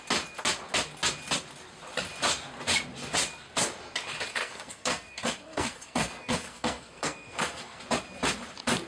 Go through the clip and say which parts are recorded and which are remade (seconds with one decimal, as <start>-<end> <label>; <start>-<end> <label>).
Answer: 0.0-4.3 recorded; 4.3-7.8 remade; 7.8-8.9 recorded